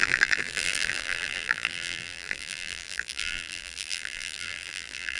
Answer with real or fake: fake